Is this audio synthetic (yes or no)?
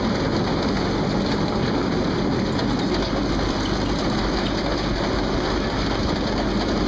no